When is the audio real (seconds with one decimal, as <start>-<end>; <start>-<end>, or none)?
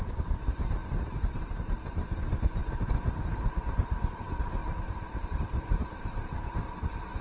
0.8-1.4; 2.6-4.1